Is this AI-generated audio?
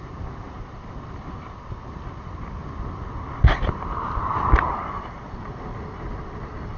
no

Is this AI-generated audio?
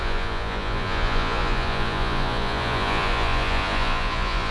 yes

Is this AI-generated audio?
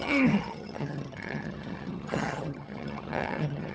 yes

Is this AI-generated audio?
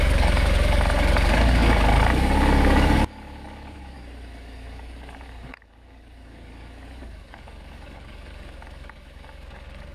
yes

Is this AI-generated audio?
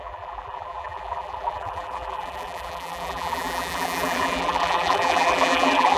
yes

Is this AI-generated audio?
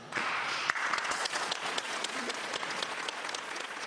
yes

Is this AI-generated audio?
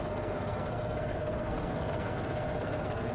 yes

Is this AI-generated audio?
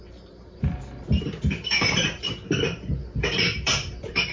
yes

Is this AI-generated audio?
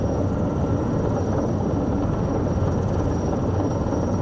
no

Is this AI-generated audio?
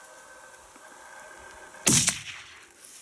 no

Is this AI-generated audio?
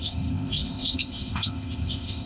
yes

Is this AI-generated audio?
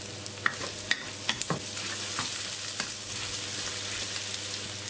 no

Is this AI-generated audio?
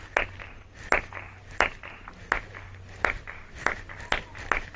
no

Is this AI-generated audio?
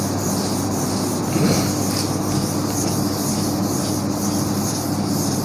no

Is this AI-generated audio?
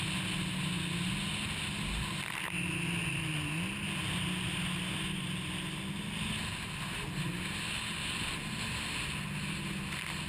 no